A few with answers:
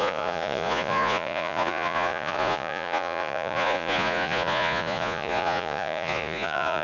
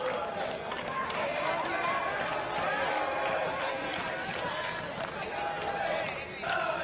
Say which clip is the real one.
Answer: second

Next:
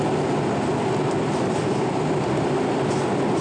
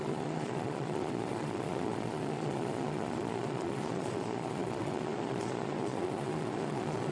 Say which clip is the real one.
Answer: first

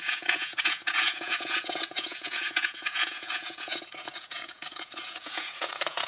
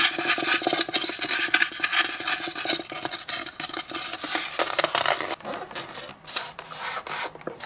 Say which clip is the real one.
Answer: second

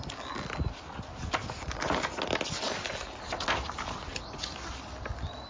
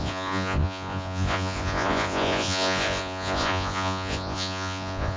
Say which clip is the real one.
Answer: first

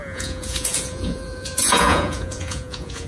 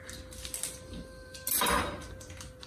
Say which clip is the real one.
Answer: second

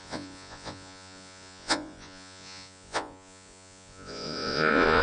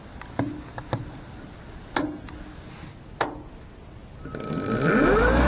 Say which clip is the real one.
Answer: second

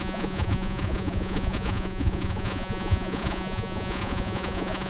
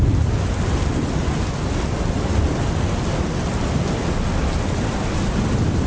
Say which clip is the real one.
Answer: second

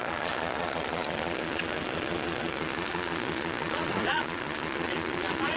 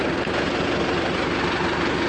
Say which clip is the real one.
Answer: second